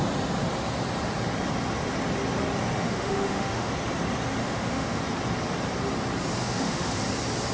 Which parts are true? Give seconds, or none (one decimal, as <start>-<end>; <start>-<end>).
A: 0.0-2.8; 3.7-4.4; 5.0-6.4; 7.0-7.5